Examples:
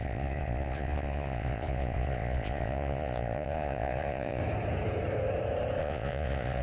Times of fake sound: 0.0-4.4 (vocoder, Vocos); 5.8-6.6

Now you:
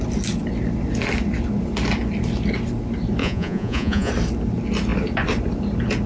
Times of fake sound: 3.2-4.1 (vocoder, Vocos)